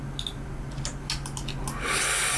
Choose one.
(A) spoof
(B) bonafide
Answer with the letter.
B